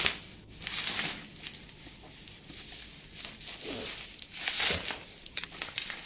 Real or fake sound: real